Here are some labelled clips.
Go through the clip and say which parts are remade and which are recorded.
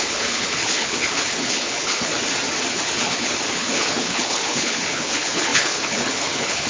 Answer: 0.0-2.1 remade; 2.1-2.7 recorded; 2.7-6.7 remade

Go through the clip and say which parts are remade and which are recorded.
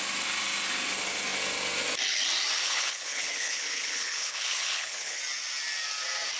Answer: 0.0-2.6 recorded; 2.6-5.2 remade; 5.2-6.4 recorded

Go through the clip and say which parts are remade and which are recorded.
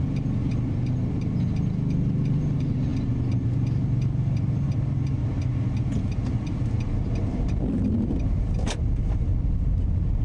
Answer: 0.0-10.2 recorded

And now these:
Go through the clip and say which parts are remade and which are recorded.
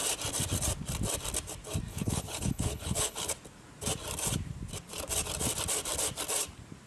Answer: 0.0-1.9 recorded; 1.9-3.3 remade; 3.3-6.9 recorded